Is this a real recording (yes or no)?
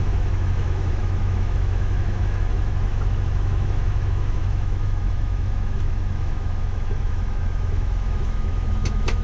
no